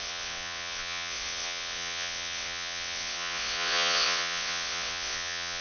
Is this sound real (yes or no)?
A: no